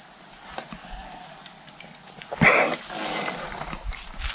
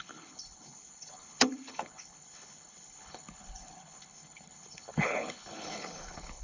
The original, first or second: first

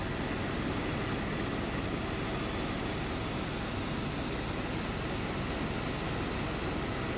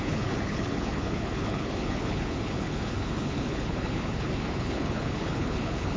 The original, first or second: first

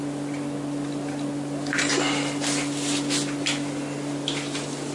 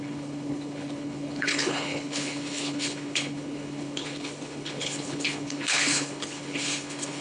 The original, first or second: first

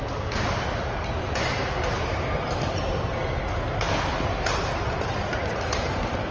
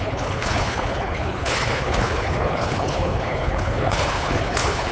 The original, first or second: first